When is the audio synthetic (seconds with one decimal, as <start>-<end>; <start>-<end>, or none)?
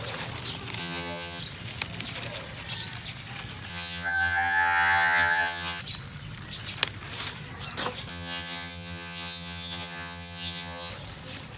0.8-1.4; 3.7-5.8; 8.1-10.9